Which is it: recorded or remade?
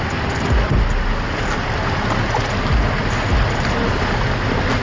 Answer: recorded